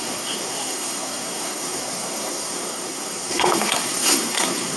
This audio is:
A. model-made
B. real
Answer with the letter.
A